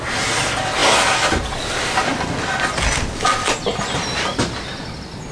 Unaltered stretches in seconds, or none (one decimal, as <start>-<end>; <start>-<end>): 0.0-5.3

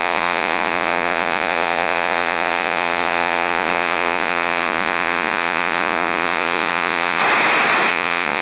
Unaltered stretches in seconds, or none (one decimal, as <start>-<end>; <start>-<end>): 7.2-7.9

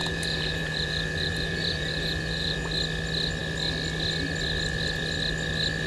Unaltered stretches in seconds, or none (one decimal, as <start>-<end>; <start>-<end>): 2.7-5.9

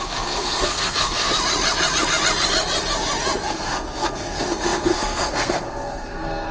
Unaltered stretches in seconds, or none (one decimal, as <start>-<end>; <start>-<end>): 1.3-3.5

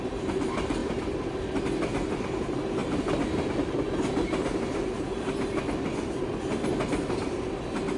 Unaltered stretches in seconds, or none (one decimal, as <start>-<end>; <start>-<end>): 0.0-8.0

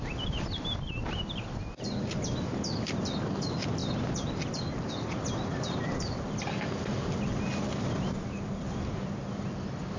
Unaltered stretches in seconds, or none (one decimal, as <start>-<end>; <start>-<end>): 0.0-10.0

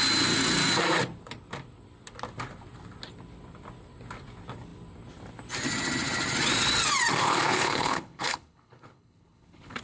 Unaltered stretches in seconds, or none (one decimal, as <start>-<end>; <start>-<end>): 0.0-7.2